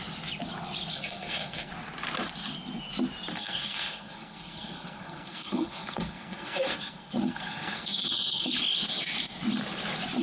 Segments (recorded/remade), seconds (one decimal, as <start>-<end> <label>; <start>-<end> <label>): 0.0-0.9 recorded; 0.9-1.7 remade; 1.7-3.3 recorded; 3.3-8.5 remade; 8.5-10.2 recorded